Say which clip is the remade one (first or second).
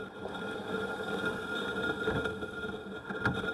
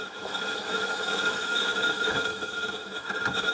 second